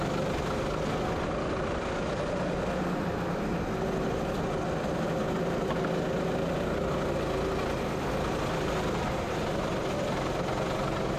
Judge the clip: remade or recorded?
recorded